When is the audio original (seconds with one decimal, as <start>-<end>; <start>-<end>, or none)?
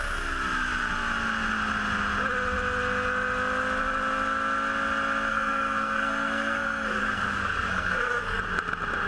0.0-5.3; 8.4-9.1